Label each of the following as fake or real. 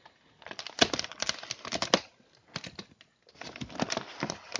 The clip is real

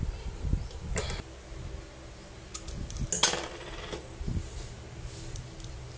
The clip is real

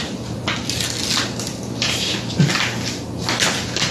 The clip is real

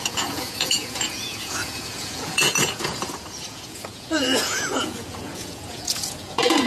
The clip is fake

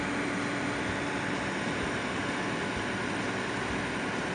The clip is real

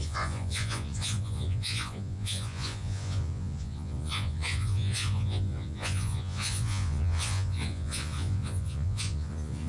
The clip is fake